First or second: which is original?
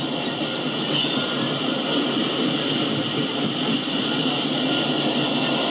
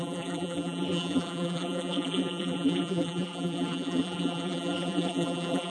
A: first